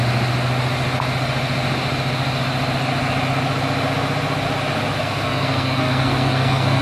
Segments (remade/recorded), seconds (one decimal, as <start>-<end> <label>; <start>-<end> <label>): 0.0-5.0 recorded; 5.0-6.8 remade